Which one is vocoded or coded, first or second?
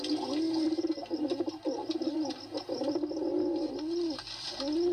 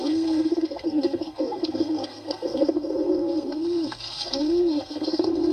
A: second